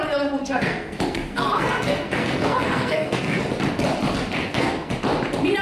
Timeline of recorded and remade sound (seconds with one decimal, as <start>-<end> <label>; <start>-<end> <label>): 0.0-0.4 recorded; 0.4-3.4 remade; 3.4-4.4 recorded; 4.4-4.9 remade; 4.9-5.6 recorded